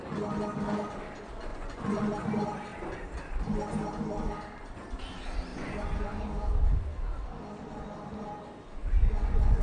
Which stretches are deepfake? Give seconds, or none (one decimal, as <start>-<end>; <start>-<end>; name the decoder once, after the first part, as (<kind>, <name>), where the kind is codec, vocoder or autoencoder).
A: 1.5-2.0 (vocoder, Vocos); 5.5-6.2; 8.8-9.6